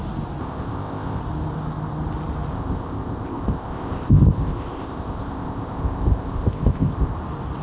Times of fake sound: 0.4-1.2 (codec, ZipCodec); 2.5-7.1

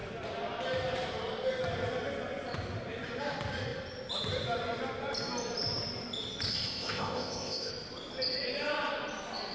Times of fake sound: 6.5-7.7 (codec, ZipCodec)

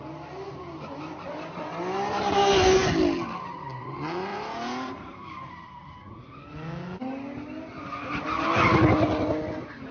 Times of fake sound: none

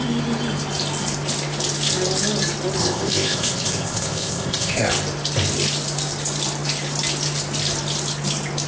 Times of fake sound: 2.8-4.9 (codec, ZipCodec)

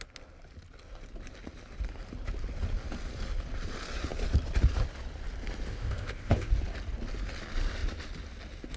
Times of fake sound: 5.7-6.5 (codec, ZipCodec)

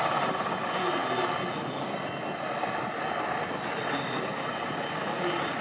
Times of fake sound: none

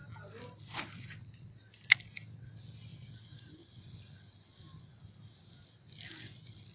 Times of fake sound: none